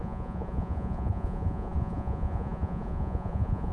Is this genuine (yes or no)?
no